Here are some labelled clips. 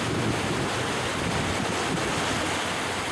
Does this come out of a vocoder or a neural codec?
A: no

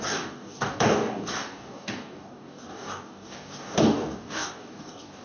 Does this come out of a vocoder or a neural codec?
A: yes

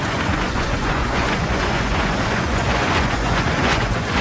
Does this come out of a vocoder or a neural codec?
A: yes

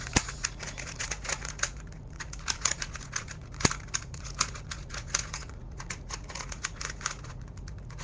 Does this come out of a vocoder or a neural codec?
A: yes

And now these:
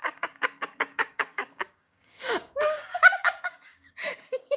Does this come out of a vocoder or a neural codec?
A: yes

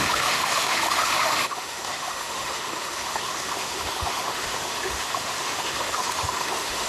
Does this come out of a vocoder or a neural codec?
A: yes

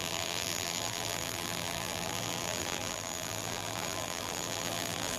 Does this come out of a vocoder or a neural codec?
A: yes